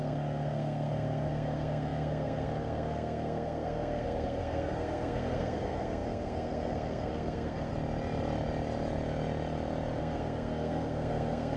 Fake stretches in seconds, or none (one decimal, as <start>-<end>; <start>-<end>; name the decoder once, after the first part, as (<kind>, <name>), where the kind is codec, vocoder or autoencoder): 0.0-7.7 (codec, SNAC); 10.0-11.6